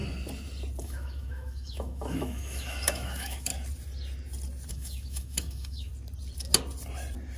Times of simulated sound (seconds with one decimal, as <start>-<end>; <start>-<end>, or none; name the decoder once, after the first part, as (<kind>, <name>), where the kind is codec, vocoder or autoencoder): 0.8-3.5 (autoencoder, DAC-VAE); 4.7-5.9